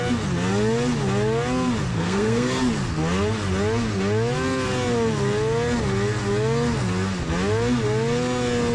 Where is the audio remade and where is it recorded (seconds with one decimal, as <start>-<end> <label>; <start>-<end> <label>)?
0.0-1.9 recorded; 1.9-2.6 remade; 2.6-8.7 recorded